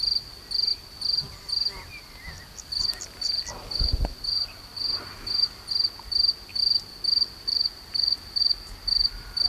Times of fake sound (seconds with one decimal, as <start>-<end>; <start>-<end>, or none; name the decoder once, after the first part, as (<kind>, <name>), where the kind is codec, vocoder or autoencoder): none